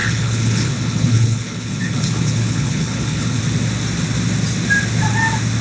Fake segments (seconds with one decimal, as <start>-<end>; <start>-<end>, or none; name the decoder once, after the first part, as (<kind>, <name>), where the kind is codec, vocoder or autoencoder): 0.0-3.4 (codec, HILCodec)